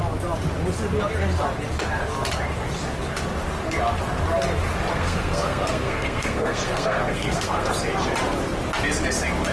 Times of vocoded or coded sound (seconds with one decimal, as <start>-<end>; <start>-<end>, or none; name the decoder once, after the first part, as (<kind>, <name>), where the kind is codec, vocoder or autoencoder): 4.9-7.7 (codec, SNAC)